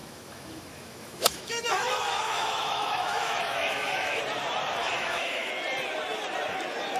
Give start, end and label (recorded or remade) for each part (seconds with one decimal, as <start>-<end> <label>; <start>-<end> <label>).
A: 0.0-4.2 remade; 4.2-4.8 recorded; 4.8-5.5 remade; 5.5-7.0 recorded

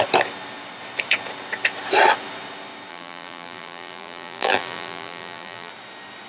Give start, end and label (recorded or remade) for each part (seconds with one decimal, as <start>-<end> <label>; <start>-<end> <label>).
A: 0.0-2.9 recorded; 2.9-5.7 remade; 5.7-6.3 recorded

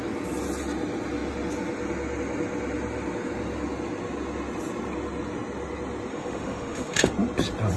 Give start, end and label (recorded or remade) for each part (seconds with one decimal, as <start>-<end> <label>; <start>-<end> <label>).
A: 0.0-6.1 recorded; 6.1-7.1 remade; 7.1-7.8 recorded